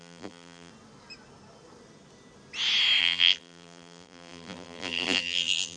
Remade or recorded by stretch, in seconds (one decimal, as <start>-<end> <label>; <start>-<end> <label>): 0.0-0.7 remade; 0.7-3.0 recorded; 3.0-5.8 remade